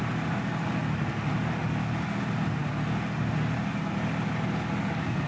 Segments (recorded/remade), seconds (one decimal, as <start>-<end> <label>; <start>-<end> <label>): 0.0-5.3 recorded